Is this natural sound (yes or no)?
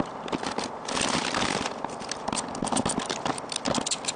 yes